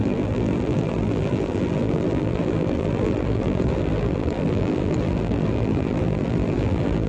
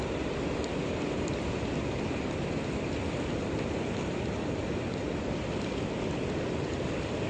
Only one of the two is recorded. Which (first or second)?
second